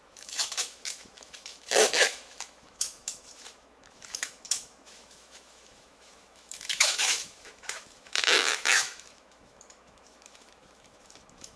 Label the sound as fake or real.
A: fake